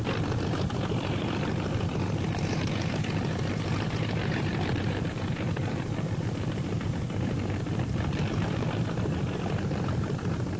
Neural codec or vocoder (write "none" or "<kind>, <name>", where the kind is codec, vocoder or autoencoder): vocoder, BigVGAN v2